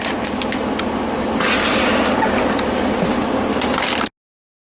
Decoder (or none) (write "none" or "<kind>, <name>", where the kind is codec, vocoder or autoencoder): none